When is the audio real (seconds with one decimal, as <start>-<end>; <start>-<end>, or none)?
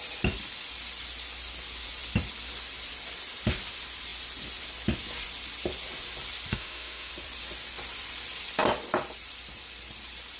0.0-6.5; 7.1-10.4